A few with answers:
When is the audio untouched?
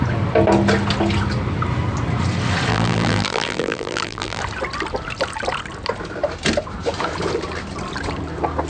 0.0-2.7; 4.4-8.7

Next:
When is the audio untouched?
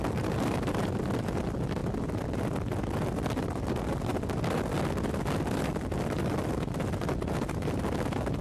1.8-5.8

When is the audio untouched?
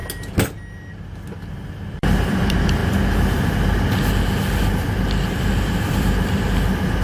0.0-1.5; 2.8-5.4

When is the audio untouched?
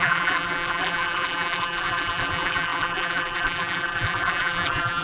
none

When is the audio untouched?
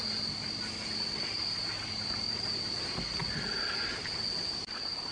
0.0-5.1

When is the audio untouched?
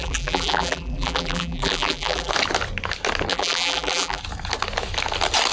2.3-3.3; 4.2-5.5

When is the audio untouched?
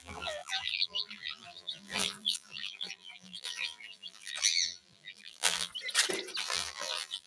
5.7-6.4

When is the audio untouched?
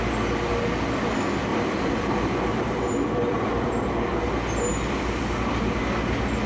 0.0-1.5; 4.2-4.7; 5.8-6.5